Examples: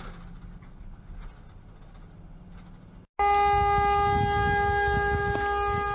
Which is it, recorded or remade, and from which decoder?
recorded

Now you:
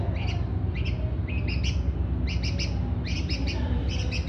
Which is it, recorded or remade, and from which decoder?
recorded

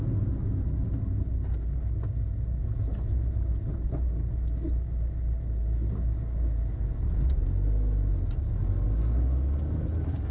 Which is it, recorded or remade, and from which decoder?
recorded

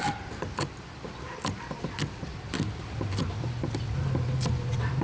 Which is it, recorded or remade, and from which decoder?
recorded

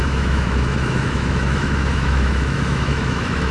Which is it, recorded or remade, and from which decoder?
remade, autoencoder, DAC-VAE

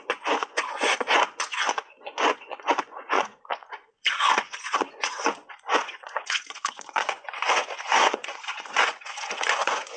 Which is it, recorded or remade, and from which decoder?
remade, vocoder, Vocos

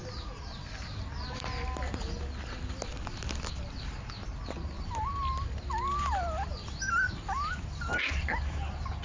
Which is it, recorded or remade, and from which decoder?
recorded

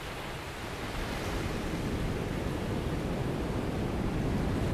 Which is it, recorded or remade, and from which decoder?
remade, vocoder, BigVGAN v2